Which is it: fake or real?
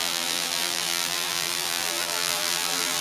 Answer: fake